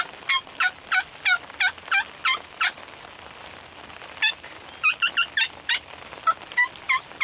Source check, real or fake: real